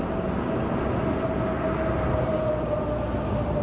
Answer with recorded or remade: recorded